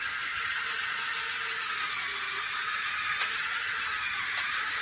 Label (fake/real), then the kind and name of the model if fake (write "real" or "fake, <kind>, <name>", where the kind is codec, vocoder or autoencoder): fake, vocoder, Vocos